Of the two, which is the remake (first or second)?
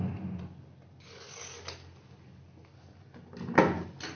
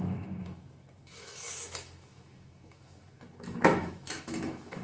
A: second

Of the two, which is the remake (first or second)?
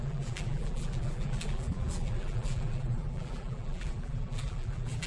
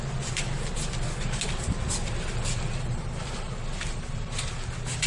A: first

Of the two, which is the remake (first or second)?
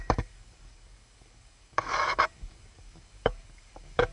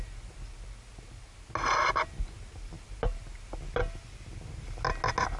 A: first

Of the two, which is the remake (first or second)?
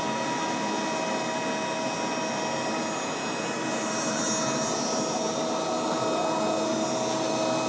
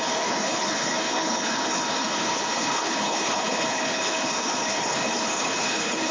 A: second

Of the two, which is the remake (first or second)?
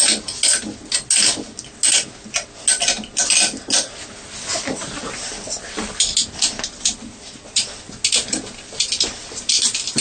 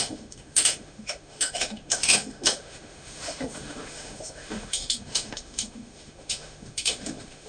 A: second